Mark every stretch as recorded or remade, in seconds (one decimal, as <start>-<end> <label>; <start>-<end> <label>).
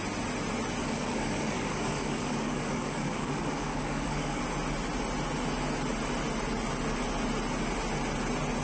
0.0-0.8 recorded; 0.8-4.4 remade; 4.4-8.6 recorded